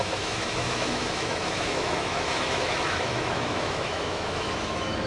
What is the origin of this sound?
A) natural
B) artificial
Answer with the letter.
B